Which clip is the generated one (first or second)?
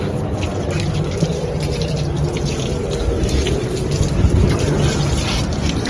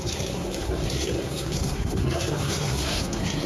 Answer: second